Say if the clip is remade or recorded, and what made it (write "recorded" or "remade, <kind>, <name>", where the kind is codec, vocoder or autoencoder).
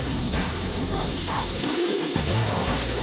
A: remade, codec, SNAC